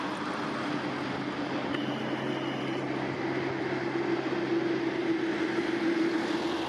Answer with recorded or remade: recorded